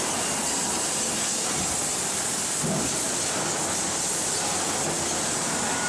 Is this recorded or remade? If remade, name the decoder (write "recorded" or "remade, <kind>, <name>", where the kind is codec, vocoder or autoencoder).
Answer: recorded